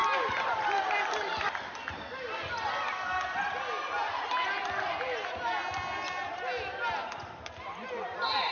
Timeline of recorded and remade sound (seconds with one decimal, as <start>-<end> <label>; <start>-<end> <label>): 0.0-8.5 recorded